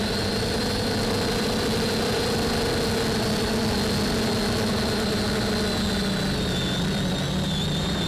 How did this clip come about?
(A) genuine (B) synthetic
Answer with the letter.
A